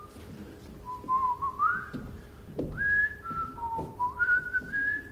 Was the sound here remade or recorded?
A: recorded